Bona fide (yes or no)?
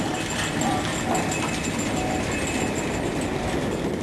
yes